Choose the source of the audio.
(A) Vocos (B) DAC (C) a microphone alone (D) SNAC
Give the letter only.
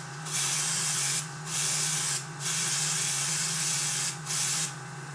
A